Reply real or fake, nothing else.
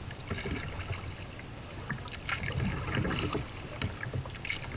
real